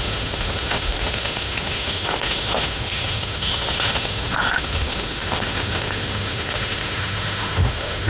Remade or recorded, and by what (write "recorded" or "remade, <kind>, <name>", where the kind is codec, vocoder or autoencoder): remade, autoencoder, DAC-VAE